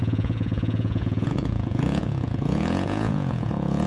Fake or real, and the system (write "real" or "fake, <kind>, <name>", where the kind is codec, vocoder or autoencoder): fake, vocoder, Vocos